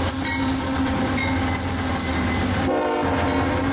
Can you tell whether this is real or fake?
real